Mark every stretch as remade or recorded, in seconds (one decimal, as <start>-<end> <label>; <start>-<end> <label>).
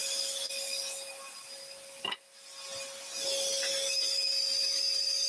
0.0-5.3 recorded